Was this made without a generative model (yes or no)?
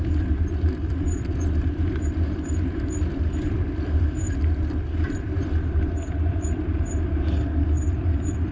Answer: no